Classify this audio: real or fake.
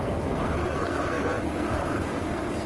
fake